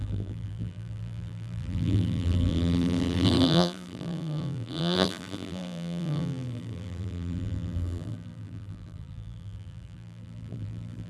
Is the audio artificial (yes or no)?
yes